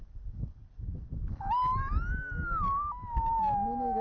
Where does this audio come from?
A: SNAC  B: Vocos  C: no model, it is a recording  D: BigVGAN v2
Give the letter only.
C